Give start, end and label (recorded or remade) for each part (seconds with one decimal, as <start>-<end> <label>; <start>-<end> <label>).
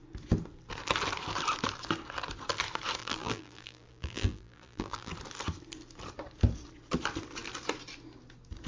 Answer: 0.0-3.0 recorded; 3.0-5.1 remade; 5.1-8.7 recorded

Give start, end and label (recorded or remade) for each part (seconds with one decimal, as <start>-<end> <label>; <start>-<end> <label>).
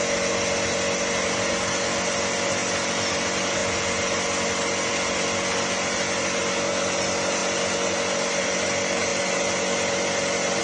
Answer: 0.0-10.6 recorded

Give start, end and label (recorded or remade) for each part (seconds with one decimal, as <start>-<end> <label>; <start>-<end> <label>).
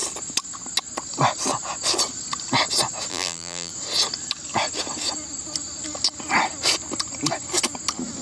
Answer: 0.0-3.1 recorded; 3.1-3.7 remade; 3.7-8.2 recorded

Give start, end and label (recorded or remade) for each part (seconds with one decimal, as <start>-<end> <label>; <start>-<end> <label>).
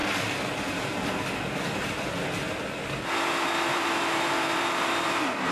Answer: 0.0-3.7 recorded; 3.7-5.5 remade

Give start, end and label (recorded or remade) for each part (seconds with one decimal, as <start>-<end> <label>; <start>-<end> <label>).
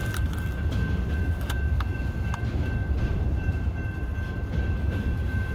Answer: 0.0-1.1 recorded; 1.1-1.9 remade; 1.9-3.1 recorded; 3.1-4.1 remade; 4.1-4.8 recorded; 4.8-5.5 remade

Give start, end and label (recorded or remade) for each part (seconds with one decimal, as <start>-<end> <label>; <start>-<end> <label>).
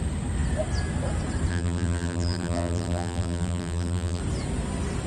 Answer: 0.0-1.5 recorded; 1.5-4.2 remade; 4.2-5.1 recorded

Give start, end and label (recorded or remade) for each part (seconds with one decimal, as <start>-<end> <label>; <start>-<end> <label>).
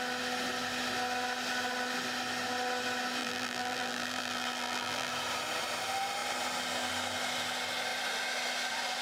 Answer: 0.0-3.2 recorded; 3.2-5.1 remade; 5.1-9.0 recorded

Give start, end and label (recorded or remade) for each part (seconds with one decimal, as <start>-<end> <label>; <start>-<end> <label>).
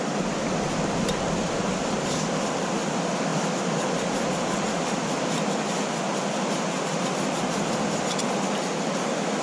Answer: 0.0-9.4 recorded